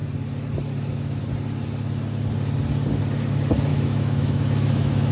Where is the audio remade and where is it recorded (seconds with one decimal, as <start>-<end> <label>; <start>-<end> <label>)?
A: 0.0-3.7 recorded; 3.7-5.1 remade